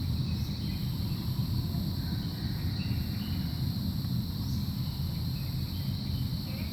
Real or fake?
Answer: real